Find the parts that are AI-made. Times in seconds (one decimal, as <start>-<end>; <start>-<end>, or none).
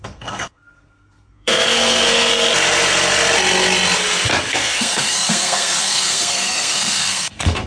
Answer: 0.0-2.3; 4.5-7.7